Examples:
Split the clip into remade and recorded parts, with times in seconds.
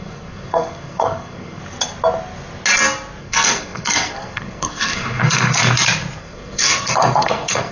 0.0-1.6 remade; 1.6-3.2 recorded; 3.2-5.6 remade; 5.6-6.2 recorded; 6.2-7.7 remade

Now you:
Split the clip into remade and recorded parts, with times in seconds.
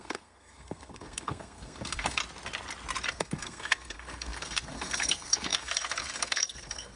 0.0-2.2 remade; 2.2-3.1 recorded; 3.1-7.0 remade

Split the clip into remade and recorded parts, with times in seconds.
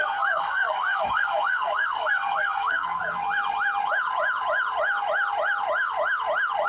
0.0-3.0 remade; 3.0-6.7 recorded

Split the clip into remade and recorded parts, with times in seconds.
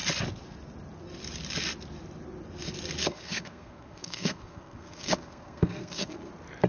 0.0-3.0 recorded; 3.0-6.3 remade; 6.3-6.7 recorded